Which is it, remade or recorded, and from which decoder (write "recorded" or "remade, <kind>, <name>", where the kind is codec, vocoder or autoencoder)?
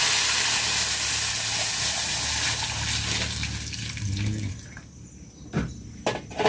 recorded